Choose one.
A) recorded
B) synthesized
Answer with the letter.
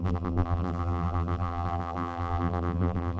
B